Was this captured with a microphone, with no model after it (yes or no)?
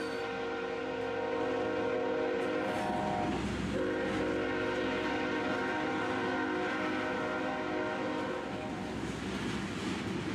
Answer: yes